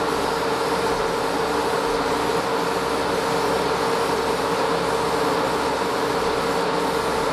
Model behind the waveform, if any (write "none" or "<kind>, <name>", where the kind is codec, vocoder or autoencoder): none